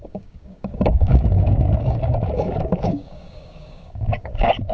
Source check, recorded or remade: remade